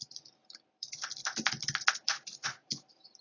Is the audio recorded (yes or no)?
no